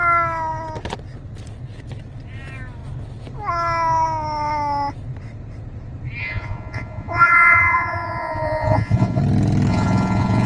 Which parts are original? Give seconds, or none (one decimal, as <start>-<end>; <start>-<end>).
0.0-6.2; 9.2-9.7